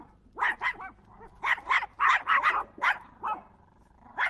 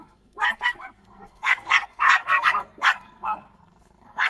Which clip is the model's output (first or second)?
second